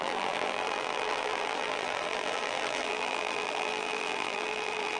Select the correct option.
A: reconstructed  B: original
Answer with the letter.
A